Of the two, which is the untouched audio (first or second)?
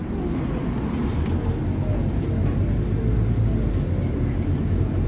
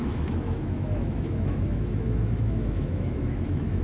first